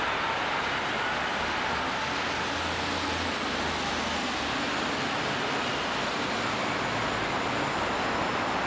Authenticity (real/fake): real